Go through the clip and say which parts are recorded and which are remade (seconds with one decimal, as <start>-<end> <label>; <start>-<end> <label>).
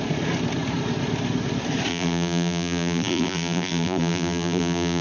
0.0-1.9 recorded; 1.9-5.0 remade